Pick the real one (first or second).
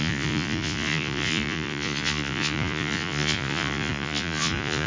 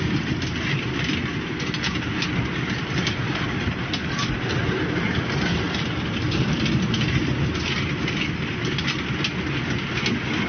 second